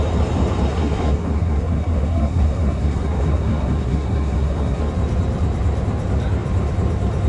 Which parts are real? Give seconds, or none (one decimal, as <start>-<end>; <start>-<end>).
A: 0.0-0.7; 4.9-7.3